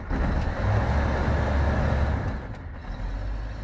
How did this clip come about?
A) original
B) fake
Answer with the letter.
A